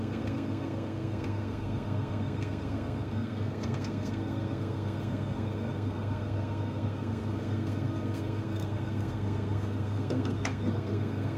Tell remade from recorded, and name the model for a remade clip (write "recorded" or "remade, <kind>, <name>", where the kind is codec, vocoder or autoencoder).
remade, codec, SNAC